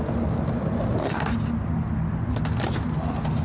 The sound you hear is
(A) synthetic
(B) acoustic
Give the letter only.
B